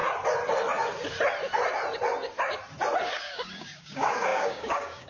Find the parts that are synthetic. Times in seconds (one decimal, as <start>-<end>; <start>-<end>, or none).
3.1-5.1